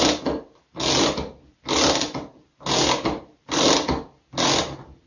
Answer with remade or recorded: recorded